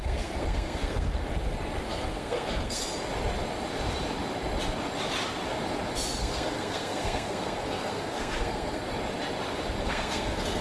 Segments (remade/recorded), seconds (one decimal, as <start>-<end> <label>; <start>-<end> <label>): 0.0-1.2 remade; 1.2-1.8 recorded; 1.8-2.9 remade; 2.9-6.2 recorded; 6.2-8.8 remade; 8.8-9.8 recorded; 9.8-10.6 remade